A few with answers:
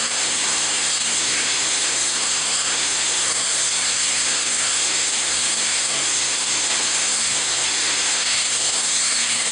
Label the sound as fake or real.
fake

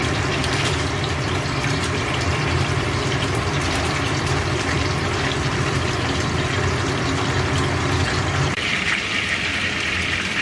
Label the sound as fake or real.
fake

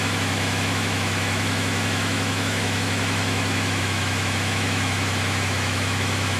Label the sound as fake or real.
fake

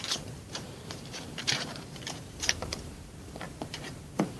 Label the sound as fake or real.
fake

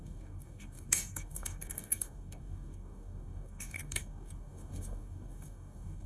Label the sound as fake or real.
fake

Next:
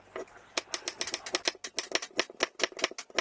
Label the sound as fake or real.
real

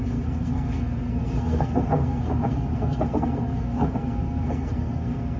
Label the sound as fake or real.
fake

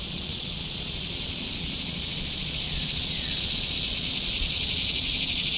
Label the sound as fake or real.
fake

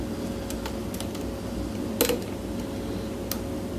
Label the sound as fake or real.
real